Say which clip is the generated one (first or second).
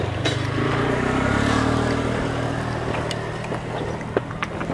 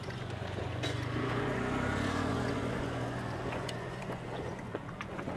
second